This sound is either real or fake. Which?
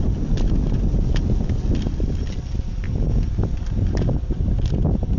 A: real